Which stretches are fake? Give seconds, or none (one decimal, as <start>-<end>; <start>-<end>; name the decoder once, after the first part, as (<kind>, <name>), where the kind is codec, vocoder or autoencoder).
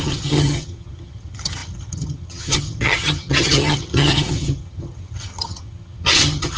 0.0-6.6 (vocoder, HiFi-GAN)